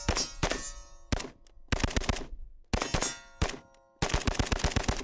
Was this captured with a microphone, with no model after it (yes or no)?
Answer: yes